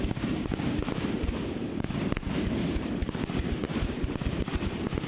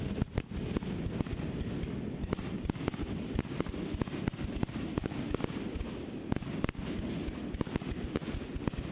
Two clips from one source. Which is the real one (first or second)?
second